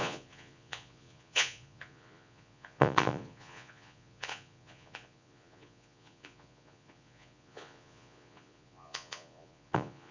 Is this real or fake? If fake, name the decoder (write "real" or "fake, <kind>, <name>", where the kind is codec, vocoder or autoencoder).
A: fake, vocoder, Vocos